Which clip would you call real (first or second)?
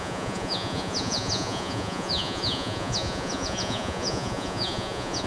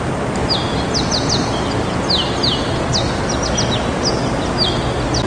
second